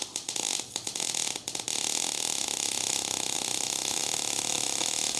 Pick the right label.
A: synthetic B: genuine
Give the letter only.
B